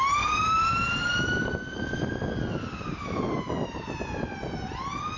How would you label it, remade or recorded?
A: recorded